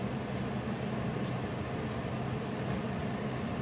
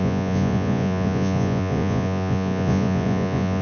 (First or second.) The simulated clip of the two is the second